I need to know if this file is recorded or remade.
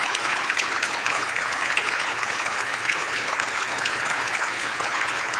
remade